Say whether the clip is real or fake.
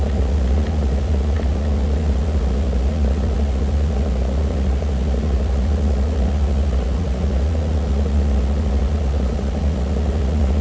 fake